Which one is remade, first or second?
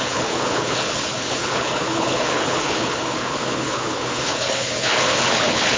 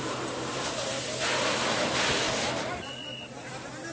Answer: first